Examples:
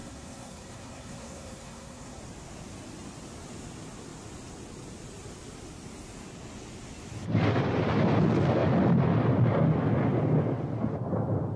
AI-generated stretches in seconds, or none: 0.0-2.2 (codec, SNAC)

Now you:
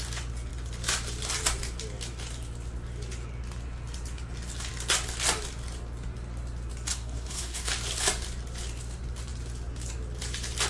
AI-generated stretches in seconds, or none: 6.9-7.7 (codec, SNAC)

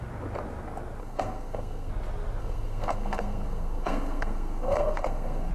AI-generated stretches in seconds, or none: 1.0-1.9 (codec, SNAC); 2.4-5.5

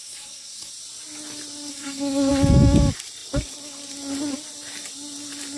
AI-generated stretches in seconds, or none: 0.0-0.7 (codec, SNAC); 1.7-2.3

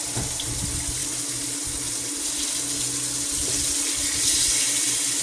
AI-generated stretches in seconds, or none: none

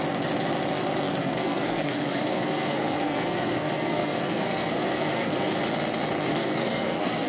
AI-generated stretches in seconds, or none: 1.2-5.6 (codec, SNAC); 6.3-7.3

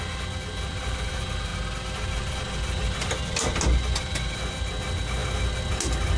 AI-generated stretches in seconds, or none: none

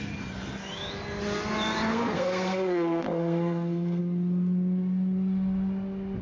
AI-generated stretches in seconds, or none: 1.9-4.0 (codec, SNAC)